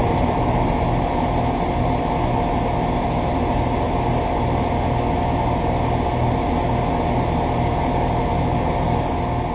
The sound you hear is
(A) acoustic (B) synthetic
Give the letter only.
A